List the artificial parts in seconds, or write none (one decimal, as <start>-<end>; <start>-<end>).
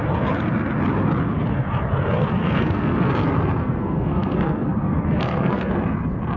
2.4-3.1; 3.6-5.7